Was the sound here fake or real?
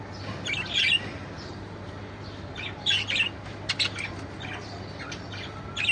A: real